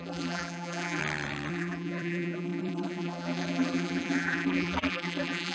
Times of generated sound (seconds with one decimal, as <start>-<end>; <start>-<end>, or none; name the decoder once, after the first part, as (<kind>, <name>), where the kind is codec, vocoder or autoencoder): 0.0-1.0 (vocoder, BigVGAN v2); 1.5-5.5